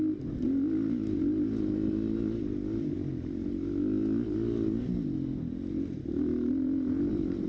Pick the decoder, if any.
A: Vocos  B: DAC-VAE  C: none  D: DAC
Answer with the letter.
C